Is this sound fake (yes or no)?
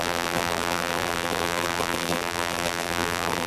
yes